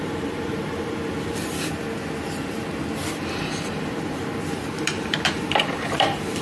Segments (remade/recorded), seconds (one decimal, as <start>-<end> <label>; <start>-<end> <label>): 0.0-1.4 remade; 1.4-3.1 recorded; 3.1-6.4 remade